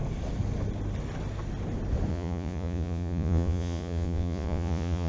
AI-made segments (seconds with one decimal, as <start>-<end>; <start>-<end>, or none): 2.1-5.1

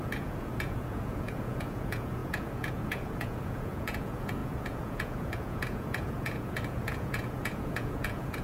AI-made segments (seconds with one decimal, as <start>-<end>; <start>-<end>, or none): 0.0-8.4

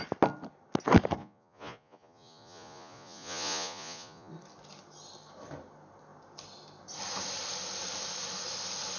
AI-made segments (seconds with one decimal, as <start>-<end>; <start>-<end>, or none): 1.2-4.3

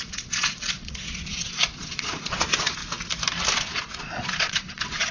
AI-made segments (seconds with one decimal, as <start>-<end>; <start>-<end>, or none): 0.0-2.8; 3.6-5.1

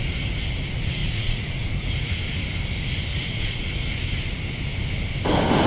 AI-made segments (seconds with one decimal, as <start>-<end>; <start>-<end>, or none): 1.0-2.1; 3.1-3.7

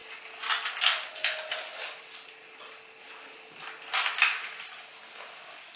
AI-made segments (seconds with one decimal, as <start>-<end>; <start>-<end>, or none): none